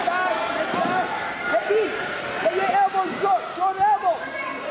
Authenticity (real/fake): real